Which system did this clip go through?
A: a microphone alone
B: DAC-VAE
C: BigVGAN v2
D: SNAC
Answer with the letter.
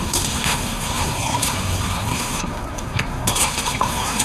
D